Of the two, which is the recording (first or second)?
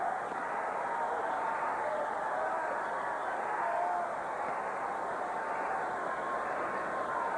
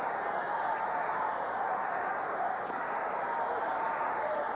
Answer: first